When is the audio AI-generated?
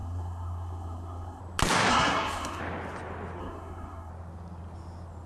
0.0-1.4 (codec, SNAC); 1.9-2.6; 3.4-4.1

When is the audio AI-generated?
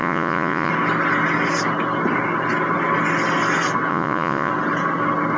0.0-0.7 (vocoder, Vocos); 3.9-4.5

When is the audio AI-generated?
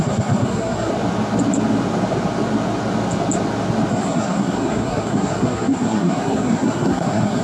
0.0-0.9 (codec, SNAC); 3.9-7.4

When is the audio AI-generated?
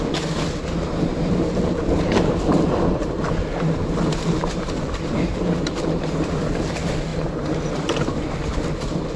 0.0-9.2 (vocoder, BigVGAN v2)